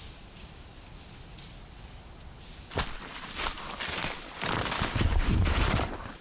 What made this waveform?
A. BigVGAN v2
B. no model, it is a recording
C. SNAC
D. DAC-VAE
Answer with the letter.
B